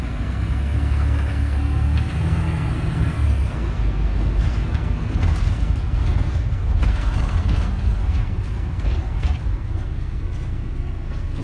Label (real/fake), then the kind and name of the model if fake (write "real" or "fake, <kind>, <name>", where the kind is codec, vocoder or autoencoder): fake, codec, SNAC